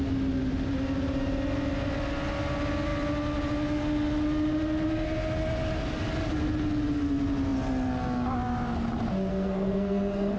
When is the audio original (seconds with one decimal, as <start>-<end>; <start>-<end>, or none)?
0.0-9.3